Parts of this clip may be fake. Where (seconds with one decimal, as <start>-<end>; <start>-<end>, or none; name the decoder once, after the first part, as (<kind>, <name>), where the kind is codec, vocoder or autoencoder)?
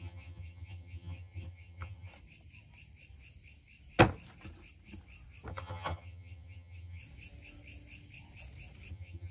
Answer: 0.0-2.1 (vocoder, HiFi-GAN); 5.5-7.0; 8.9-9.3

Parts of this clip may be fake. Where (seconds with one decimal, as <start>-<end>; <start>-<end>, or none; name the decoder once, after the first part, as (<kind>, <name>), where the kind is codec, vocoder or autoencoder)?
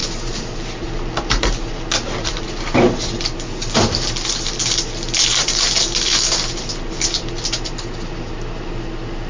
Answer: none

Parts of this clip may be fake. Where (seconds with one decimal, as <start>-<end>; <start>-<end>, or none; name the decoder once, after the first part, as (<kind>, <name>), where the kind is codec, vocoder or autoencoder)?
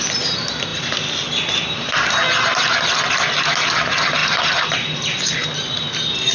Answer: none